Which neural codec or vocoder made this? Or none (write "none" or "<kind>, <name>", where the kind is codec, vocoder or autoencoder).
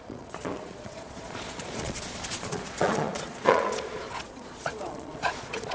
vocoder, Vocos